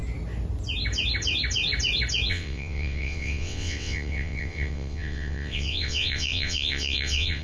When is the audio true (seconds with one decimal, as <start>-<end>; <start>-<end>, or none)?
0.0-2.3